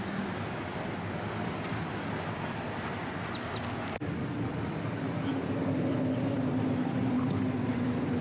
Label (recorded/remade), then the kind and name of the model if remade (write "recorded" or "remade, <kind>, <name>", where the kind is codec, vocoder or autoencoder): recorded